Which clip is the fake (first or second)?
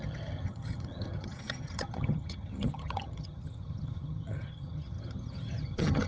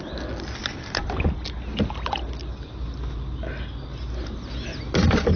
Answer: first